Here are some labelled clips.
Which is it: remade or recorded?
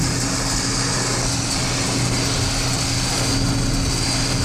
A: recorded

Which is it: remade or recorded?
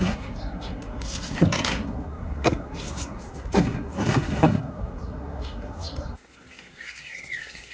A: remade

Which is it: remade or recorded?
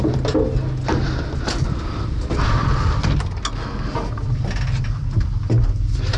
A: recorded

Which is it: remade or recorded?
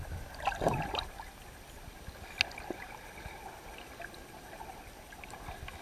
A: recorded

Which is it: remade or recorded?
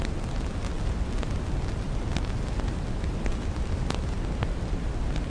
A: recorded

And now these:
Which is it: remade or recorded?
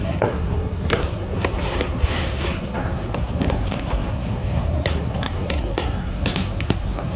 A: remade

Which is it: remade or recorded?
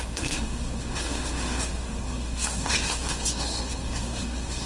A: remade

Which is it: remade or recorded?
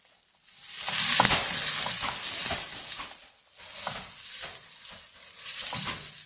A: recorded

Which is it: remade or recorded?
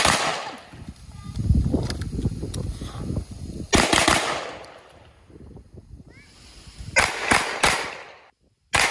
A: recorded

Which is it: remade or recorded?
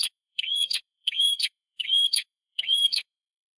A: remade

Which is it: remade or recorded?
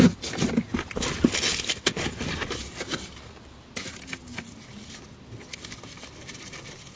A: recorded